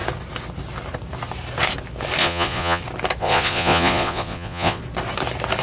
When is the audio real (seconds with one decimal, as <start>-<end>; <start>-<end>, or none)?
0.0-2.2; 2.8-3.2; 4.8-5.6